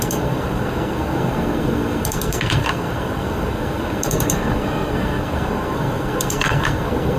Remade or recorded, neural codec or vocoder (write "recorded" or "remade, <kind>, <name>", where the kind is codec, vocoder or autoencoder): remade, codec, SNAC